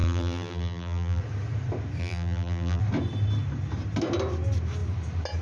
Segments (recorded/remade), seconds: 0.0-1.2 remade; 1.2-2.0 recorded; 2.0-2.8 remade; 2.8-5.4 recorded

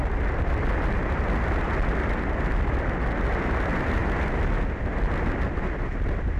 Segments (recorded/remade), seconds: 0.0-6.4 recorded

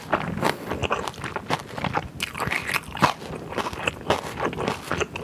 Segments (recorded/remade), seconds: 0.0-5.2 recorded

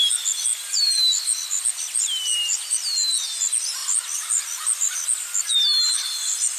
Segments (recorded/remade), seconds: 0.0-6.6 recorded